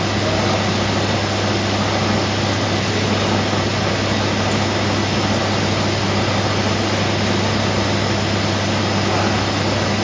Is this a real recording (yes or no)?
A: yes